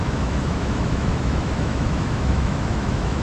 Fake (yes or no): yes